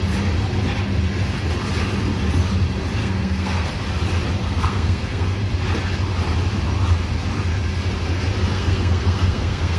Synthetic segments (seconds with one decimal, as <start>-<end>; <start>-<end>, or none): 3.0-3.7; 4.4-5.4; 8.5-9.8